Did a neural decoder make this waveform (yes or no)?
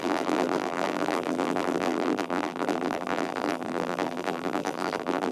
yes